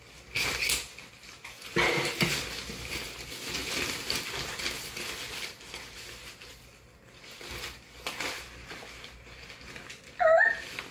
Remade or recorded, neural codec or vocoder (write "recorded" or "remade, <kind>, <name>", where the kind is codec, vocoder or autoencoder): recorded